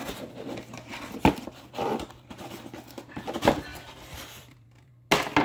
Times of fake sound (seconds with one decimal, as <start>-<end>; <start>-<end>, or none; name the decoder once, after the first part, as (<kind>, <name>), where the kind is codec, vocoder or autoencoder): 0.9-2.7 (vocoder, BigVGAN v2); 3.7-4.9